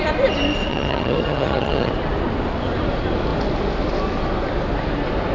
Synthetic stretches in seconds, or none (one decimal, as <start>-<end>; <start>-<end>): 0.7-1.9